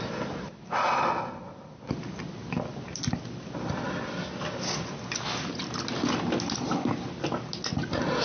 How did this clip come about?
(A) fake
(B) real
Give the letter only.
B